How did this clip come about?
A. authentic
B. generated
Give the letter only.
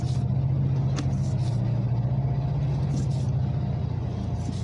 A